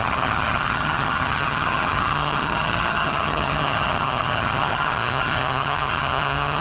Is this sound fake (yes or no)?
yes